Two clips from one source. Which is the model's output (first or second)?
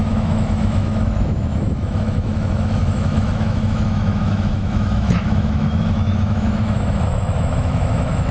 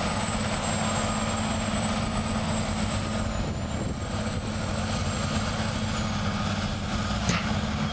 first